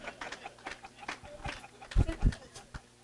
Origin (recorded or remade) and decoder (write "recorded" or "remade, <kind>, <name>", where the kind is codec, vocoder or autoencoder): recorded